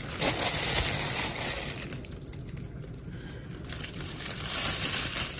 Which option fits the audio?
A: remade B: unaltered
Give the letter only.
B